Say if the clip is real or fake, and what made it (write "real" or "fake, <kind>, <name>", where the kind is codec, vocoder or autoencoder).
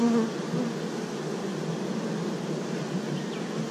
real